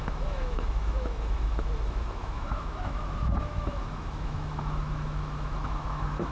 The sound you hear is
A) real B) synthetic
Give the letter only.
B